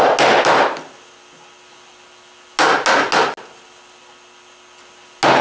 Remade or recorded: recorded